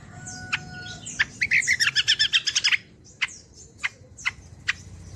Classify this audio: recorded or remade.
recorded